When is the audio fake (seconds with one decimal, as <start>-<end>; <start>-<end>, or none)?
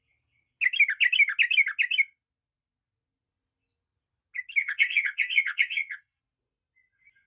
4.6-6.2